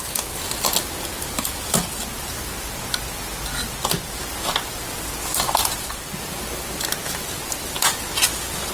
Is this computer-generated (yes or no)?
no